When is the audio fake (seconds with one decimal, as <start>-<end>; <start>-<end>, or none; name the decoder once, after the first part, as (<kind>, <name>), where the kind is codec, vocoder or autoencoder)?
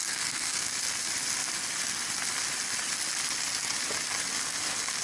0.0-0.7 (codec, SNAC)